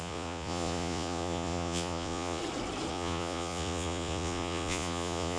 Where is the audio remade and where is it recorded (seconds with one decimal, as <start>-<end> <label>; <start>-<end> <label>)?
0.0-2.4 remade; 2.4-2.9 recorded; 2.9-5.4 remade